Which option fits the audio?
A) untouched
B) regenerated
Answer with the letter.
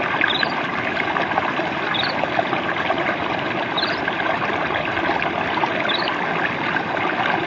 A